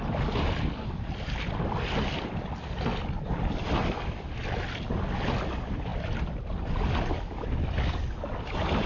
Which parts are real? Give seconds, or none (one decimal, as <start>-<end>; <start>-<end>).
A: 0.0-8.9